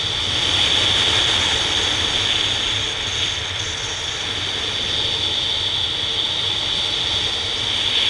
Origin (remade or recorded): recorded